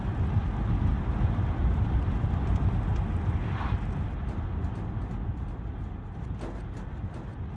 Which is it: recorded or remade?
recorded